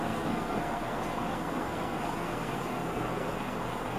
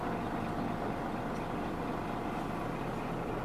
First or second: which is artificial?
first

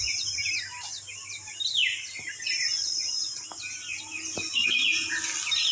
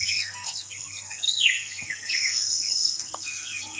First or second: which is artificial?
second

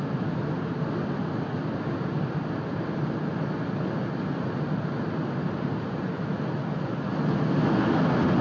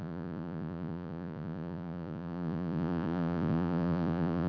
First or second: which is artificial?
second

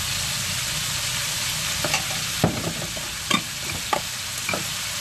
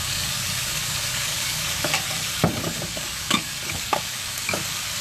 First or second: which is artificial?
second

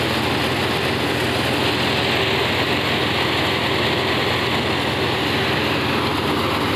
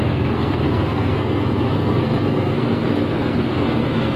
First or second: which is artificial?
second